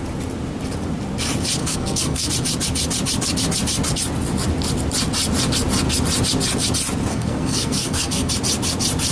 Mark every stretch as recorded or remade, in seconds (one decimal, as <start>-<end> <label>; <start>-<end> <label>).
0.0-1.6 recorded; 1.6-2.3 remade; 2.3-7.1 recorded; 7.1-8.3 remade; 8.3-9.1 recorded